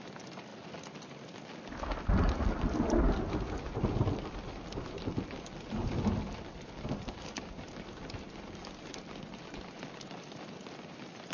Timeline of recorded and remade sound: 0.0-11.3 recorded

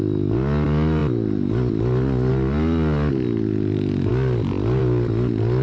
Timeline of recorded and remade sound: 0.0-5.6 recorded